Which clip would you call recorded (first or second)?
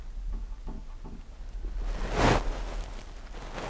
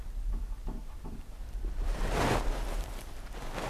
first